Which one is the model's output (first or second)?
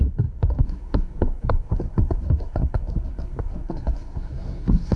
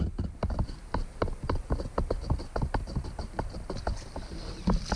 first